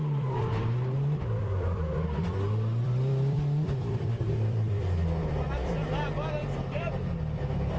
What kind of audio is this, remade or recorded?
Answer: remade